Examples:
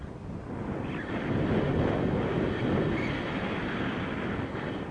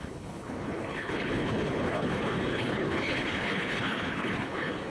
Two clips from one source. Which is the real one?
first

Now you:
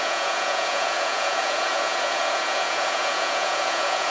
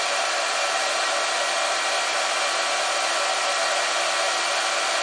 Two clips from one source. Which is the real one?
second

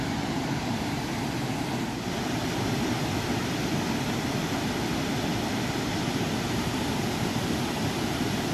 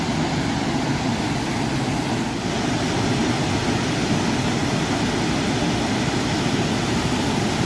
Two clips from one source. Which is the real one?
second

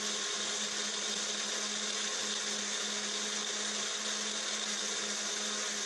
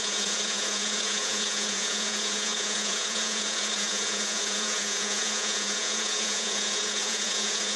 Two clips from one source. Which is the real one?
first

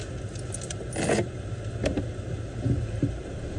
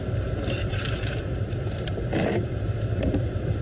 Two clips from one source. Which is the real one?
first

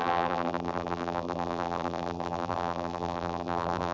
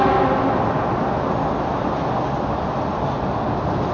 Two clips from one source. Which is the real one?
second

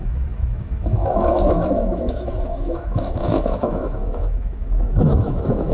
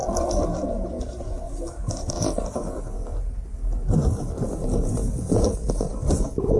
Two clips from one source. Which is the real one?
second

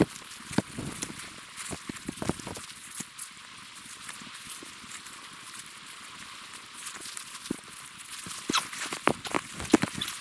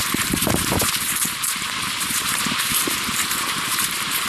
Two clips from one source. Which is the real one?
first